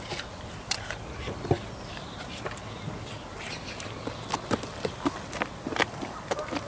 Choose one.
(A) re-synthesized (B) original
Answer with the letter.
B